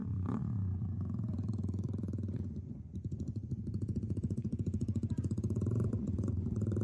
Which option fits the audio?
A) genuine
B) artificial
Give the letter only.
B